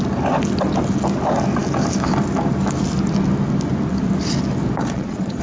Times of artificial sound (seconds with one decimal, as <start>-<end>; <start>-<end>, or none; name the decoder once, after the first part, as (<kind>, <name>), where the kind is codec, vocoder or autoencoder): 4.8-5.4 (vocoder, Vocos)